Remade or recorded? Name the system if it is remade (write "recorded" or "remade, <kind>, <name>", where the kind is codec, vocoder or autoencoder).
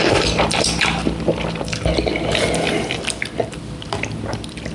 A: remade, vocoder, BigVGAN v2